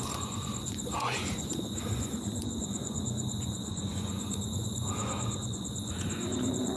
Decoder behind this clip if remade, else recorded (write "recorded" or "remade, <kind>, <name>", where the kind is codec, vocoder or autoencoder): remade, vocoder, Vocos